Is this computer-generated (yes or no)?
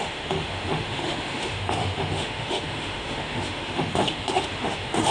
yes